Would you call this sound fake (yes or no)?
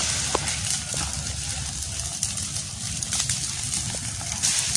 no